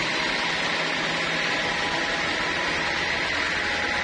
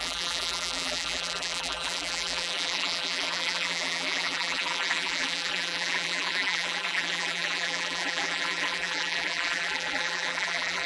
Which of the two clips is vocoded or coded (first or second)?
second